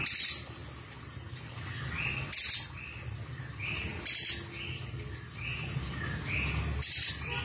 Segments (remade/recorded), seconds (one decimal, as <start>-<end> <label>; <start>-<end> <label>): 0.0-7.4 recorded